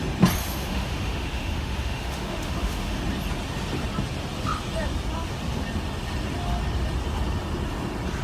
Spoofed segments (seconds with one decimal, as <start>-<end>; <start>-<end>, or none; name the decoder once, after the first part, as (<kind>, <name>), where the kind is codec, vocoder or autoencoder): 0.4-3.0 (autoencoder, DAC-VAE)